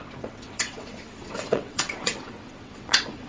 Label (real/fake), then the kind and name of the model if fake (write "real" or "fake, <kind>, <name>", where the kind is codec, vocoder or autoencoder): fake, vocoder, WaveNeXt